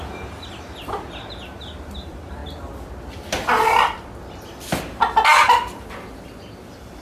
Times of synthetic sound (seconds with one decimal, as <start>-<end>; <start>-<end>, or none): 0.0-2.4; 6.6-7.0